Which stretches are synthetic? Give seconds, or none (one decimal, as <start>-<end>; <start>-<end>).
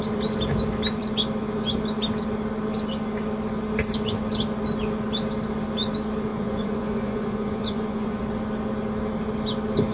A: 6.3-8.2